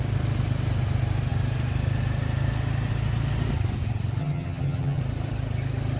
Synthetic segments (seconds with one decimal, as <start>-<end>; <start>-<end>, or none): 4.2-5.0